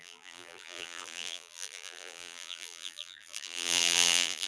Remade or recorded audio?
remade